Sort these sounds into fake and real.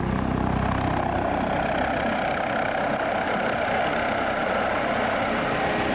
real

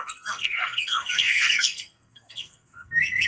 fake